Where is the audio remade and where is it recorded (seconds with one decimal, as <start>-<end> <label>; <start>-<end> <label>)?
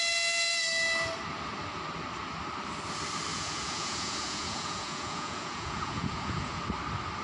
0.0-3.3 recorded; 3.3-6.6 remade; 6.6-7.2 recorded